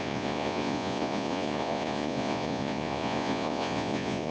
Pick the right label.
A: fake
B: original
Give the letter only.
A